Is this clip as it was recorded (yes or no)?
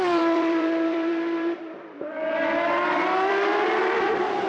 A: no